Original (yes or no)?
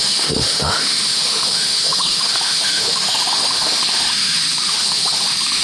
no